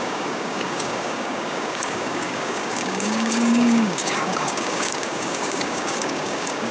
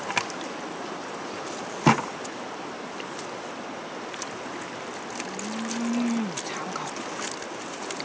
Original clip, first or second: second